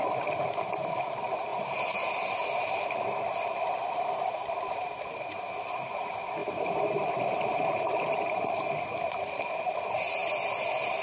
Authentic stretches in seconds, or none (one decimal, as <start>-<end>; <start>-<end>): 0.0-1.5; 2.8-6.4; 8.7-11.0